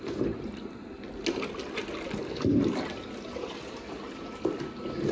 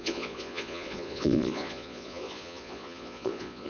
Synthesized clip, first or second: second